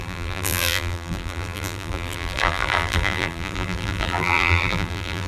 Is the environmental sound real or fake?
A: fake